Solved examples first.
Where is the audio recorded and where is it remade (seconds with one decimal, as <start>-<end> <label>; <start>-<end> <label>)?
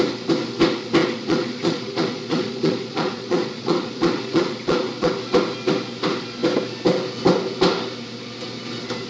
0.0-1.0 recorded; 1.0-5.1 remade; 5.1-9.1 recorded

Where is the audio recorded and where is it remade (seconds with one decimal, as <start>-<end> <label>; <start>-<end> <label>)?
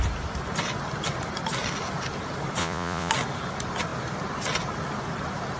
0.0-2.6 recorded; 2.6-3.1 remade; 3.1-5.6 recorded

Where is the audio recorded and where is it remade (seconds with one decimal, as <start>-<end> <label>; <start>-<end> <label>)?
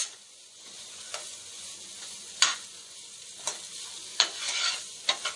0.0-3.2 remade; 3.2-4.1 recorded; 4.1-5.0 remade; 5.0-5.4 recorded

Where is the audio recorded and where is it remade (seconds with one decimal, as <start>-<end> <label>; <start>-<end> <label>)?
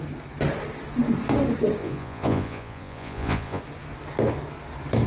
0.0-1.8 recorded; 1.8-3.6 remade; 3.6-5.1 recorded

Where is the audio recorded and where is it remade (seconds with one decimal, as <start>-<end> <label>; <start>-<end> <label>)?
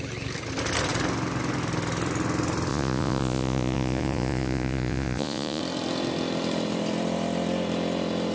0.0-2.7 recorded; 2.7-5.6 remade; 5.6-8.3 recorded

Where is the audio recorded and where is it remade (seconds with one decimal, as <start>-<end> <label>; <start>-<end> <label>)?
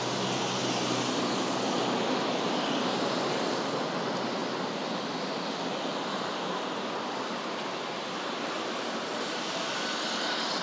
0.0-10.6 recorded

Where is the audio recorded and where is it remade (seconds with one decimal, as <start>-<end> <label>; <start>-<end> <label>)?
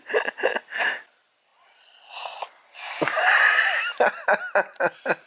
0.0-1.5 recorded; 1.5-2.5 remade; 2.5-5.3 recorded